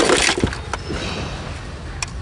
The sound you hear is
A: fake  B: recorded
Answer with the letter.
B